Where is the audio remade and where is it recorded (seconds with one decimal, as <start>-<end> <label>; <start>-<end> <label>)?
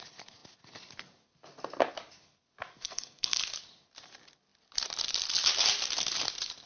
0.0-2.7 recorded; 2.7-3.4 remade; 3.4-6.7 recorded